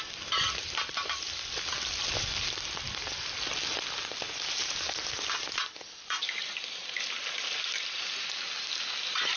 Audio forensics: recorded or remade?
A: recorded